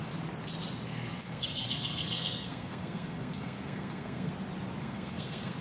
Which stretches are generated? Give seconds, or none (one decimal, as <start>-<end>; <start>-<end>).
0.9-4.3; 4.8-5.6